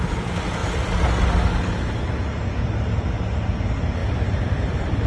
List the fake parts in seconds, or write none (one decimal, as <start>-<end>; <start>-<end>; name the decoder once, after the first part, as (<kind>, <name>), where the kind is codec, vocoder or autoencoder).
4.0-5.1 (vocoder, BigVGAN v2)